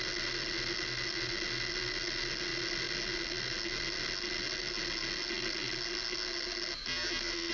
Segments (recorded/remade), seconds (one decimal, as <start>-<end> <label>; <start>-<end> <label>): 0.0-7.5 recorded